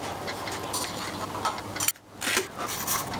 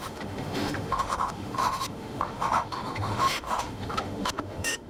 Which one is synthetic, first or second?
second